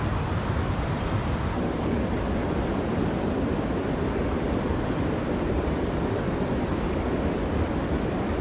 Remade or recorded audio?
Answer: recorded